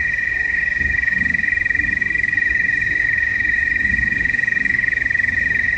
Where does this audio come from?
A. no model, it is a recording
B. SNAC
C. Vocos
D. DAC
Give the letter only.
D